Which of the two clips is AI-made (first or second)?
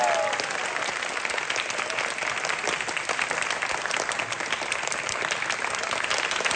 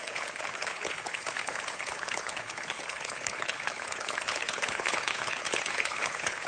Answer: second